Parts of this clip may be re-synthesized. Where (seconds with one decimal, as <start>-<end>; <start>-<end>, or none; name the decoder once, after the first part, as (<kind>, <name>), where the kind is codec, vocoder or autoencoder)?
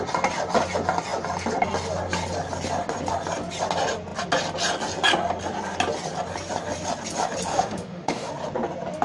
7.5-8.3 (autoencoder, DAC-VAE)